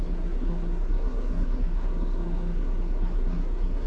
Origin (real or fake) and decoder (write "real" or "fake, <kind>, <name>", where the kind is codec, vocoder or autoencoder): fake, codec, SNAC